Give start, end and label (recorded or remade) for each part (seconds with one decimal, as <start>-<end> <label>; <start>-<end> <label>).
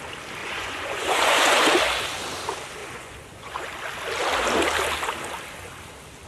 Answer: 0.0-0.4 recorded; 0.4-1.7 remade; 1.7-2.8 recorded; 2.8-3.7 remade; 3.7-6.3 recorded